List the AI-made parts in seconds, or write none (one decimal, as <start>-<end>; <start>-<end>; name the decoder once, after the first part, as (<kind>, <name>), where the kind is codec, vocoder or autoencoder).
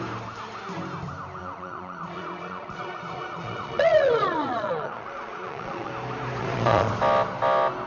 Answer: 1.4-5.9 (vocoder, Vocos); 6.4-6.9